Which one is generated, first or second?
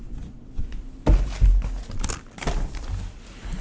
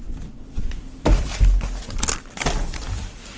second